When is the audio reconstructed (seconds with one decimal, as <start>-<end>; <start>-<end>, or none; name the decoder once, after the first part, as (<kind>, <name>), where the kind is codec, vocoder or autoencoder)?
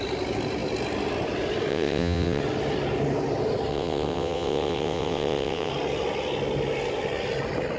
1.7-2.4 (vocoder, WaveNeXt); 3.7-5.7